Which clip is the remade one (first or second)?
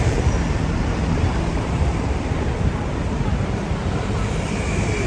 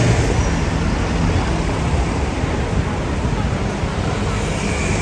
first